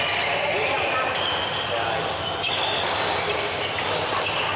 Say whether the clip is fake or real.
fake